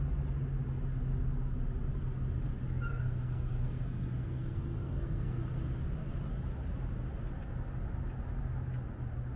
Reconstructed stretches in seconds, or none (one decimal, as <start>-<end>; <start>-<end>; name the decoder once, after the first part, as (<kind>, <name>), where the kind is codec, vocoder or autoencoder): 2.9-5.4 (codec, SNAC)